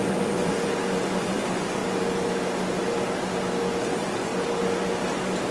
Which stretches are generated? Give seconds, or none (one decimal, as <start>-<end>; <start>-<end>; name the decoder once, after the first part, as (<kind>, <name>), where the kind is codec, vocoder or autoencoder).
0.0-0.7 (vocoder, Vocos); 1.2-1.8; 3.8-4.3